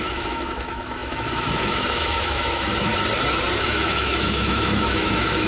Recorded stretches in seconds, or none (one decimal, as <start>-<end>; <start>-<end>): 2.9-3.6